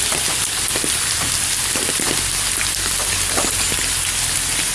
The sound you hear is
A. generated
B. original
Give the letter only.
B